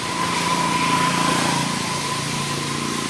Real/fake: real